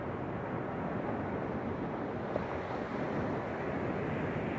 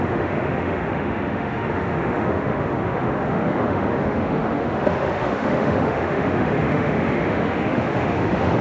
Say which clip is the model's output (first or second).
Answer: second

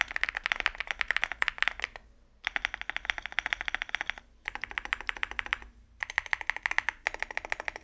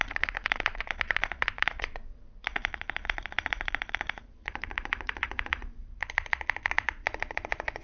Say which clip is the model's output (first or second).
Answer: second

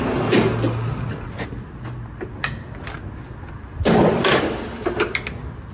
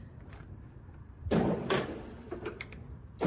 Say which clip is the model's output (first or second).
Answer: second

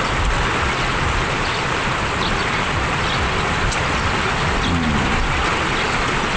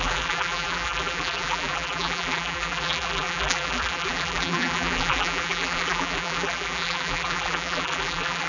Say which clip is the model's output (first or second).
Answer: second